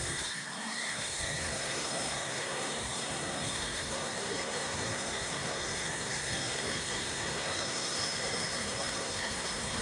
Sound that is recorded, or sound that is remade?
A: remade